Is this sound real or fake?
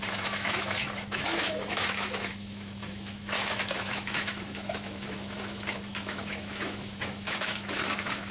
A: fake